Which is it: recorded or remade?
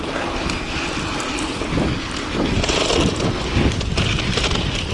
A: recorded